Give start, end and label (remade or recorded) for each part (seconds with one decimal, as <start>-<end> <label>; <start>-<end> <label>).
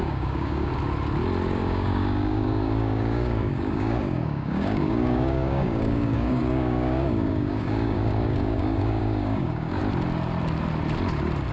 0.0-0.7 remade; 0.7-1.5 recorded; 1.5-9.8 remade; 9.8-11.5 recorded